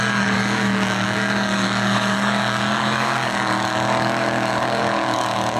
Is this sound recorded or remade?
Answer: remade